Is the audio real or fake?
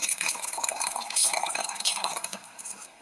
fake